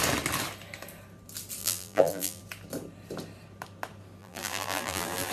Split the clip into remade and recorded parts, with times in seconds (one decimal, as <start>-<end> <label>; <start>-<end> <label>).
0.0-1.6 recorded; 1.6-2.4 remade; 2.4-4.2 recorded; 4.2-5.3 remade